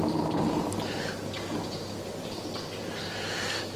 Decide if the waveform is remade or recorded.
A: recorded